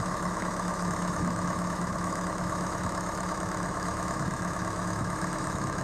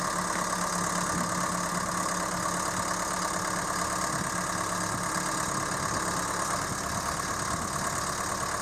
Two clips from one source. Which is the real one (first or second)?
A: second